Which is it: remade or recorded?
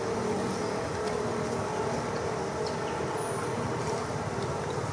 recorded